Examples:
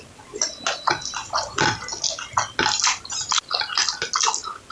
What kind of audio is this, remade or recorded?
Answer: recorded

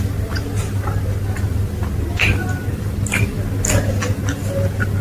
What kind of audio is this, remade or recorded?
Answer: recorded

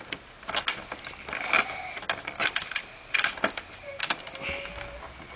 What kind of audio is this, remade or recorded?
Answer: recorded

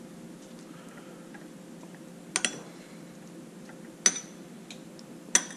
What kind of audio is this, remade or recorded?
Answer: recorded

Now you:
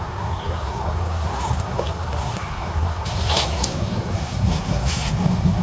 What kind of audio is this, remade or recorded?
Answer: remade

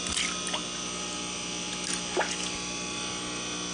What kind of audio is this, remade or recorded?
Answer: recorded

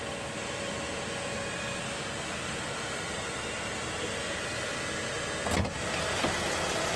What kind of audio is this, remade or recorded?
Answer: recorded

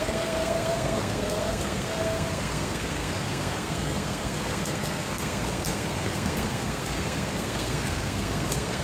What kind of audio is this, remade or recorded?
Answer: remade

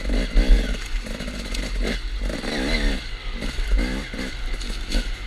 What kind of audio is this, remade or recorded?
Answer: recorded